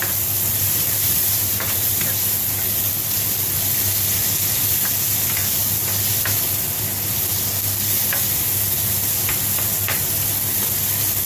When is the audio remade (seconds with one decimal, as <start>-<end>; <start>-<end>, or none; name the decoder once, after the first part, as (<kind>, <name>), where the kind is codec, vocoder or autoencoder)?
0.0-1.9 (vocoder, BigVGAN v2)